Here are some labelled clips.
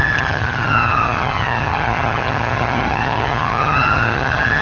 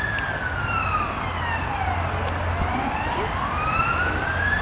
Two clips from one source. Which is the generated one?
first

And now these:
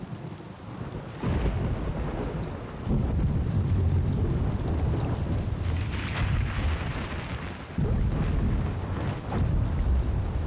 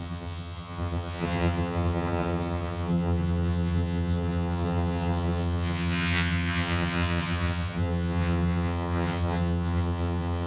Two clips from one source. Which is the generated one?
second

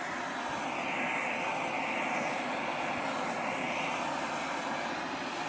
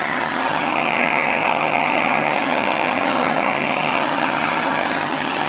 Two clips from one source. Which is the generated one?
second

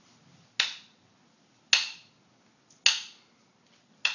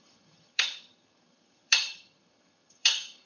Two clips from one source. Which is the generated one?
second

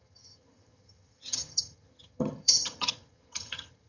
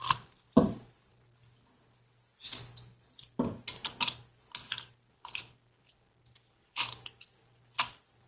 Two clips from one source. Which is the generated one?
first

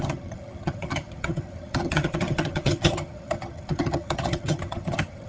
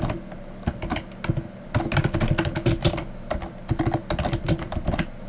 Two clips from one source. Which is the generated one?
first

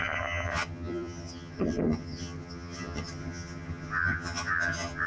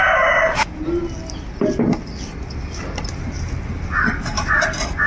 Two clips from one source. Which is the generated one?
first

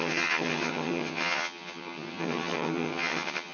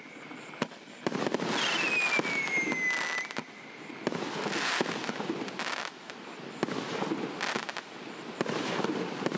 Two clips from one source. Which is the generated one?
first